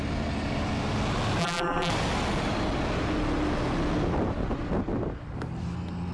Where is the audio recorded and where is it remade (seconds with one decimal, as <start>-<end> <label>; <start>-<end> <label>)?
0.0-1.4 recorded; 1.4-1.9 remade; 1.9-6.1 recorded